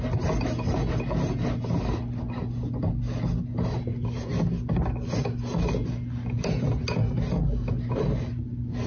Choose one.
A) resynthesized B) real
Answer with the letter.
B